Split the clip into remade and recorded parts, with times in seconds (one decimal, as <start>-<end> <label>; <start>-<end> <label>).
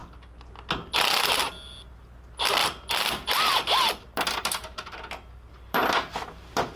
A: 0.0-2.6 recorded; 2.6-6.8 remade